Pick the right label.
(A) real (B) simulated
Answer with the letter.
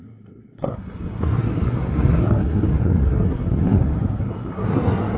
B